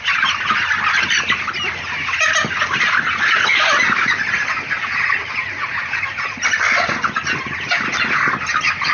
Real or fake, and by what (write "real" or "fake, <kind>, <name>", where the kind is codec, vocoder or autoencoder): real